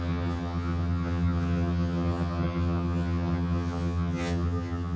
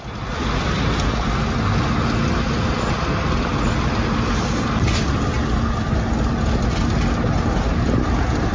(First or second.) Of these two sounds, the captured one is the second